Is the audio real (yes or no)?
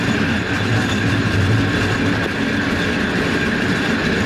yes